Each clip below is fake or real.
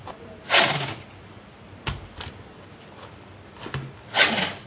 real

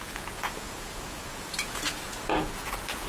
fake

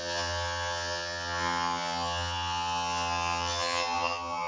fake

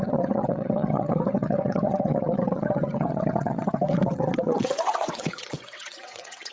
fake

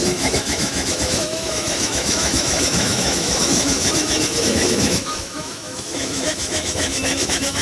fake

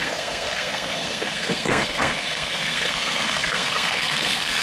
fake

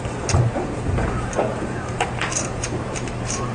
fake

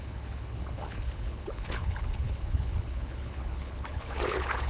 fake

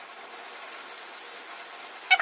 real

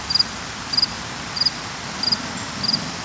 real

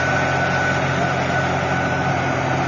real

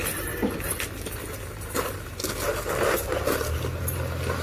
real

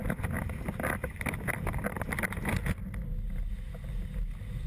real